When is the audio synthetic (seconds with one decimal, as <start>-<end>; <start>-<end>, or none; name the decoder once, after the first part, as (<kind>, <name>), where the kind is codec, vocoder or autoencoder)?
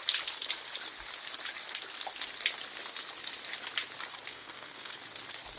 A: 4.3-5.0 (codec, SNAC)